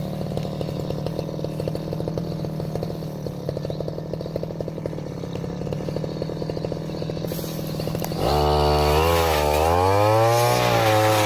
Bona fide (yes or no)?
yes